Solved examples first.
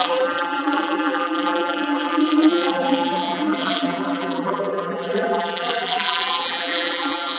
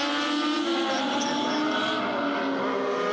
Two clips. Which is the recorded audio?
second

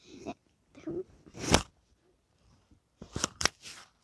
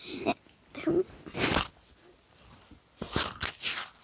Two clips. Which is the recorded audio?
second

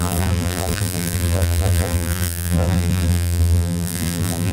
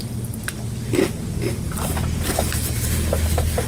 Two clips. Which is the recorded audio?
second